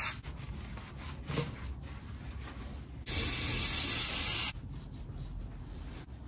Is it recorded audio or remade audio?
recorded